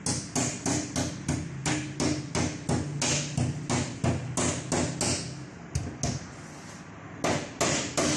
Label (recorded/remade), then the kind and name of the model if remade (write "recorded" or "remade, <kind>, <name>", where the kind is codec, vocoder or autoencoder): recorded